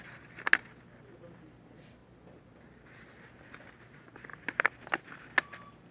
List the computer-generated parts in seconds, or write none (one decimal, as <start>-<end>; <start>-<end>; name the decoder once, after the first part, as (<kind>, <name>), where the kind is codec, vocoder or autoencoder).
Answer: none